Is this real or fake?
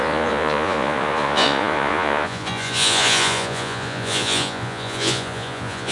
fake